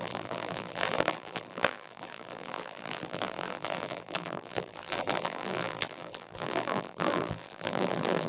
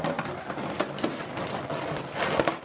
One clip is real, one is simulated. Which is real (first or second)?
second